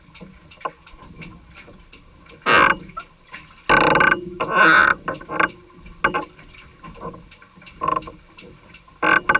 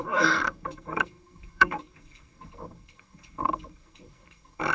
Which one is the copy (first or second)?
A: second